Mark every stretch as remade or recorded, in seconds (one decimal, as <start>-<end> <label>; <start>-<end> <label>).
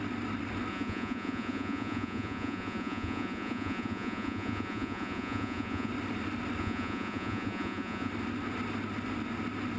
0.0-0.7 recorded; 0.7-5.9 remade; 5.9-6.6 recorded; 6.6-8.1 remade; 8.1-9.8 recorded